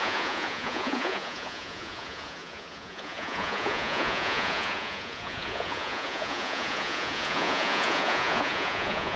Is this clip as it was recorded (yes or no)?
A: no